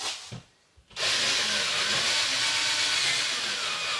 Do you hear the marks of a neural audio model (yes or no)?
no